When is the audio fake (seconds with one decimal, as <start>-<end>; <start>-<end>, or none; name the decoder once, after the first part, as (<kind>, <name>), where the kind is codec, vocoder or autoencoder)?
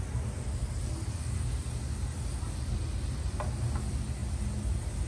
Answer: none